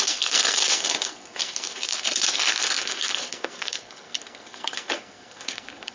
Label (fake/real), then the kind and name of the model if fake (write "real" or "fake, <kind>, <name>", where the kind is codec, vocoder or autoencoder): fake, codec, SNAC